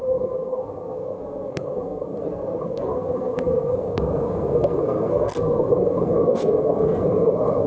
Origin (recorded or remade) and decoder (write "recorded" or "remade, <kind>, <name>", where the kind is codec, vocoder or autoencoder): remade, codec, SNAC